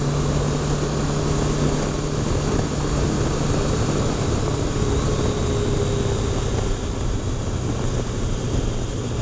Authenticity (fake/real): real